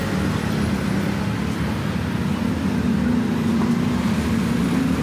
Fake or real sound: real